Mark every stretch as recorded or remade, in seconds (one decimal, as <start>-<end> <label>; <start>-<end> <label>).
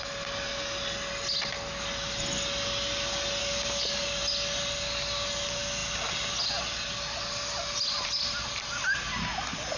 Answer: 0.0-3.4 recorded; 3.4-4.2 remade; 4.2-9.8 recorded